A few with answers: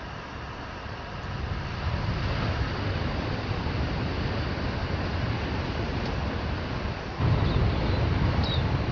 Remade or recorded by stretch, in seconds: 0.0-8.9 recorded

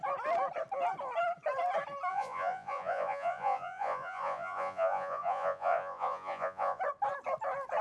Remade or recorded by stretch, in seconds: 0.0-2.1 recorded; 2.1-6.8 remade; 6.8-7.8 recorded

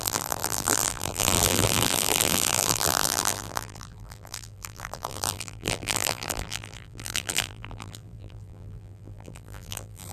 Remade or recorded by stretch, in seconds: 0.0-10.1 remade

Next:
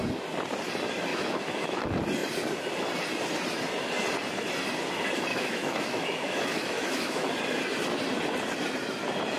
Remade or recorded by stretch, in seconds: 0.0-1.1 recorded; 1.1-1.8 remade; 1.8-5.3 recorded; 5.3-7.3 remade; 7.3-9.4 recorded

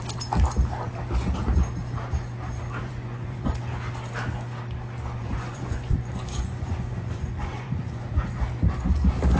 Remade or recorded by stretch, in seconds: 0.0-2.8 recorded; 2.8-3.5 remade; 3.5-5.2 recorded; 5.2-8.1 remade; 8.1-9.4 recorded

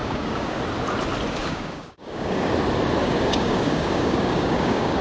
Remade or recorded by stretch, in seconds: 0.0-0.6 remade; 0.6-1.4 recorded; 1.4-2.5 remade; 2.5-3.0 recorded; 3.0-5.0 remade

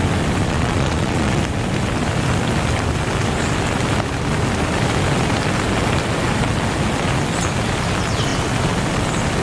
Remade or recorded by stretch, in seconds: 0.0-0.4 recorded; 0.4-1.4 remade; 1.4-9.4 recorded